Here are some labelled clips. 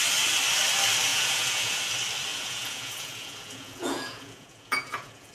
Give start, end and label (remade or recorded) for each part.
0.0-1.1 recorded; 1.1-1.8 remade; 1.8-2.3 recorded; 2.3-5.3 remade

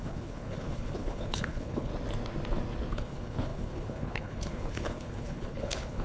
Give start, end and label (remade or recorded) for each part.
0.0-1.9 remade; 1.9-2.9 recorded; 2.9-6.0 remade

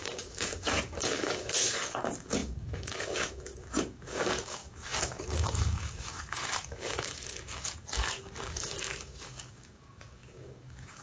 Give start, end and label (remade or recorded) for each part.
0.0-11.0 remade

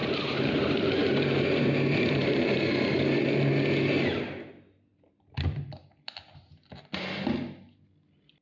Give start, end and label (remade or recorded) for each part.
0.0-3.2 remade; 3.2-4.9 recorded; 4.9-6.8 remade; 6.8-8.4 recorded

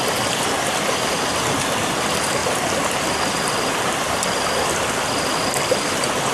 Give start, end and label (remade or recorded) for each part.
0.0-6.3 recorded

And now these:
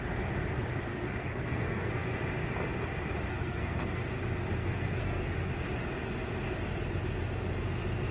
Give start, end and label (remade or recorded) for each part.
0.0-0.9 recorded; 0.9-1.9 remade; 1.9-3.3 recorded; 3.3-4.0 remade; 4.0-4.6 recorded; 4.6-5.5 remade; 5.5-8.1 recorded

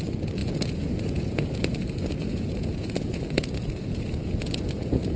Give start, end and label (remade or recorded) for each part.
0.0-5.2 remade

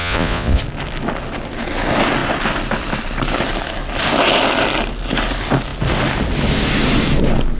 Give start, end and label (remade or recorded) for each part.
0.0-0.6 remade; 0.6-7.6 recorded